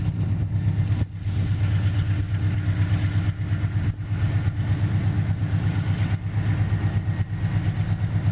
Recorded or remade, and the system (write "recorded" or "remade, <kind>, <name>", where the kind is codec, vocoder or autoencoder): recorded